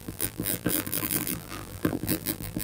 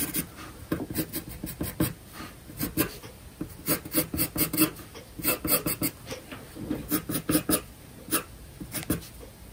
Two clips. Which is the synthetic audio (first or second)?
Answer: first